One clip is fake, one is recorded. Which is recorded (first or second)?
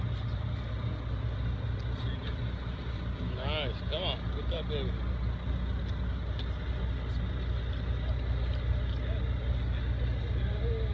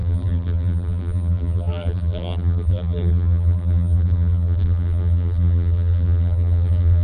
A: first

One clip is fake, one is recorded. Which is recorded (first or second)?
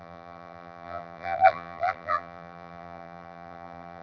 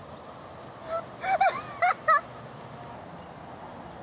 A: second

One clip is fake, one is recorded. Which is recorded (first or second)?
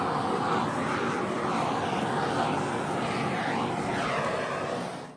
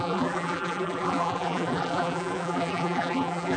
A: first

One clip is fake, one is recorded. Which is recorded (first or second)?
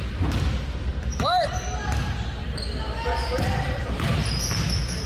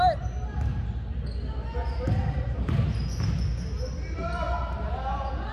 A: second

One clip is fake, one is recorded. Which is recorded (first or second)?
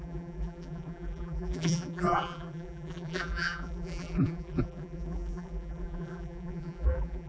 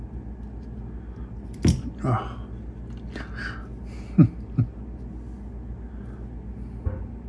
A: second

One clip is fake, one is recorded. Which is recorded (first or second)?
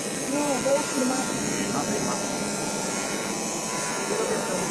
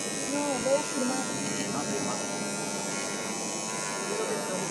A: second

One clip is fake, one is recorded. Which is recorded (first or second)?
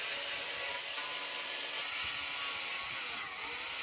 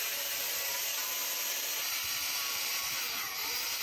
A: first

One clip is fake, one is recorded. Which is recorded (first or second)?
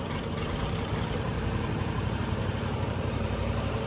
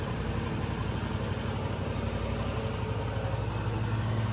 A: second